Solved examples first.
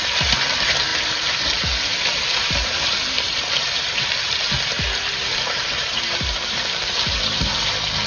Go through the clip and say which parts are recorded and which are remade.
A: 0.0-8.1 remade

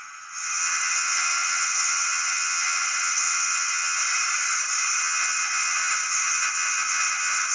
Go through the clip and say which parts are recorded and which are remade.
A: 0.0-4.0 remade; 4.0-5.0 recorded; 5.0-7.5 remade

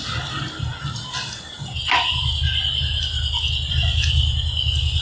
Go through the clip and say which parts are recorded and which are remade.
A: 0.0-5.0 recorded

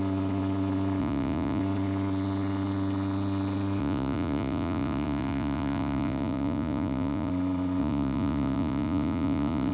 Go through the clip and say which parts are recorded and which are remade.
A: 0.0-1.0 recorded; 1.0-1.6 remade; 1.6-3.8 recorded; 3.8-7.3 remade; 7.3-7.8 recorded; 7.8-9.7 remade

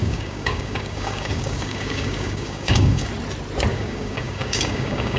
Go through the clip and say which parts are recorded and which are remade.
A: 0.0-3.1 remade; 3.1-3.7 recorded; 3.7-5.2 remade

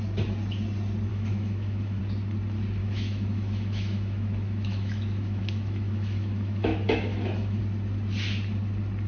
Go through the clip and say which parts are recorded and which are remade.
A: 0.0-1.1 recorded; 1.1-2.0 remade; 2.0-2.8 recorded; 2.8-7.6 remade; 7.6-9.1 recorded

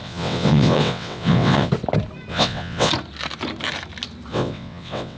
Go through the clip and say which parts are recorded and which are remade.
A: 0.0-1.7 remade; 1.7-2.3 recorded; 2.3-2.9 remade; 2.9-4.3 recorded; 4.3-5.2 remade